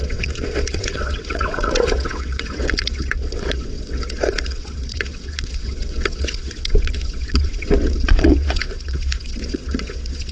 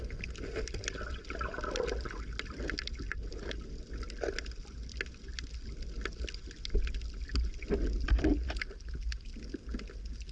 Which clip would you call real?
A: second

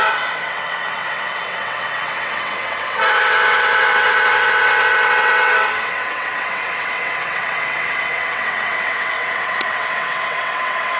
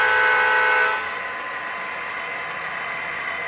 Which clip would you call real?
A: second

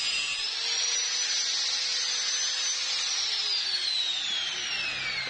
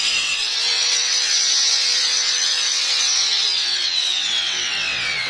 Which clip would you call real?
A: first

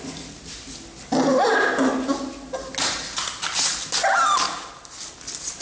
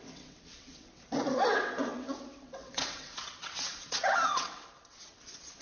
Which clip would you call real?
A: first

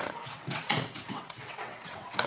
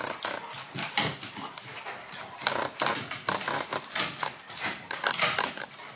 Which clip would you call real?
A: second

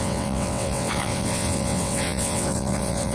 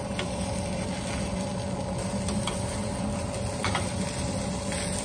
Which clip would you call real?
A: second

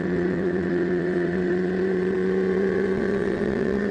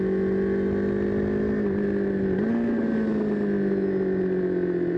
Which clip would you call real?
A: second